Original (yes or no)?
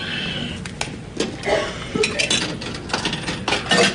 yes